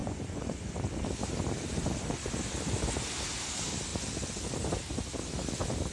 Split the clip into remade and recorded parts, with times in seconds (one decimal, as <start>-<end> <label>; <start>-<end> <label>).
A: 0.0-0.7 remade; 0.7-5.9 recorded